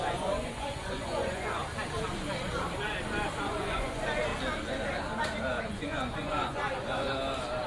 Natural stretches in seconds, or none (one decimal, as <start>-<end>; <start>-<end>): 1.6-3.4; 4.3-5.6; 7.1-7.7